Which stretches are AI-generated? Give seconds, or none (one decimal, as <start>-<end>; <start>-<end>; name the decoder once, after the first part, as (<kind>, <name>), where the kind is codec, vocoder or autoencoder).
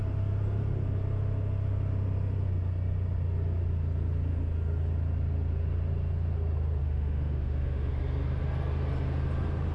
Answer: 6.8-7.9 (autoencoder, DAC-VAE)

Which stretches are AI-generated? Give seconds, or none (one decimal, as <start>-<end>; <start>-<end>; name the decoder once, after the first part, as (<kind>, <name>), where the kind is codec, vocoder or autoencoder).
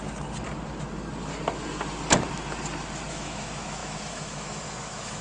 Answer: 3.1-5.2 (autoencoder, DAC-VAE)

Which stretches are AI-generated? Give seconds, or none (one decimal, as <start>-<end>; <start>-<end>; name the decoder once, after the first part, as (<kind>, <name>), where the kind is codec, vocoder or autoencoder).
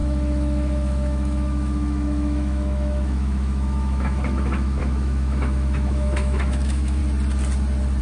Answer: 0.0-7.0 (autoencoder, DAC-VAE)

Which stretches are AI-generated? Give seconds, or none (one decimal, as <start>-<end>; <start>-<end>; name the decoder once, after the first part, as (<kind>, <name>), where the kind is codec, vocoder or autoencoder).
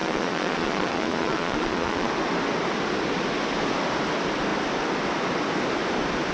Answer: 0.0-2.1 (vocoder, Vocos)